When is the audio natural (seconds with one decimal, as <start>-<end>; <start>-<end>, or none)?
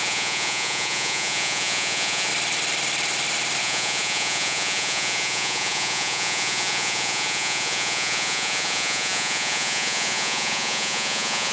2.3-3.6